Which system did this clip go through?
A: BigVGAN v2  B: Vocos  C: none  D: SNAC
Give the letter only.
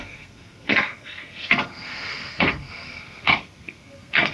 D